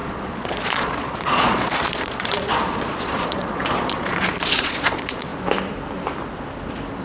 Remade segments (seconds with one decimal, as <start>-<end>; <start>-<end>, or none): 0.0-5.3